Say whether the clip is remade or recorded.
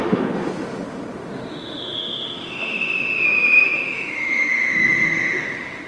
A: remade